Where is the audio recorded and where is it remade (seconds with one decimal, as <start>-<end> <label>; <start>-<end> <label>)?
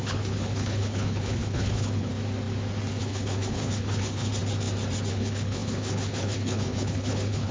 0.0-2.1 remade; 2.1-3.0 recorded; 3.0-4.3 remade; 4.3-5.1 recorded; 5.1-7.5 remade